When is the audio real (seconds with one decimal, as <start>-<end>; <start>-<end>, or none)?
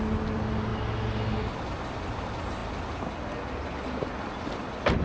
0.0-5.0